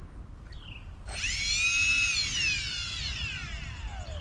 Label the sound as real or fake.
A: real